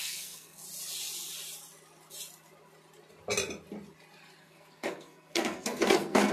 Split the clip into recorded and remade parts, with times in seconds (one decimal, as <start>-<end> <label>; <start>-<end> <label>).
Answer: 0.0-0.6 remade; 0.6-4.4 recorded; 4.4-6.3 remade